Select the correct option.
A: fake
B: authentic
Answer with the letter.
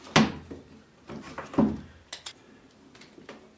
B